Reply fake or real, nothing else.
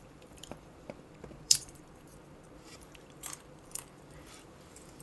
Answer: fake